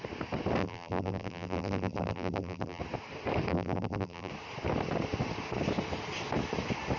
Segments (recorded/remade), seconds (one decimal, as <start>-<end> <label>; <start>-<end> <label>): 0.0-0.6 recorded; 0.6-2.8 remade; 2.8-3.5 recorded; 3.5-4.3 remade; 4.3-7.0 recorded